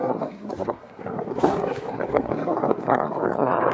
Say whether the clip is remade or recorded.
remade